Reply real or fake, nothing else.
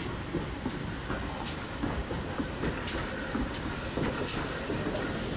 real